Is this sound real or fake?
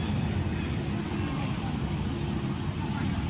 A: real